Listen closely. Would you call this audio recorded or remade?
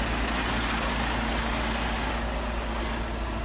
recorded